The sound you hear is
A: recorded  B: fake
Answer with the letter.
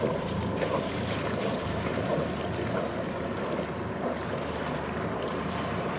B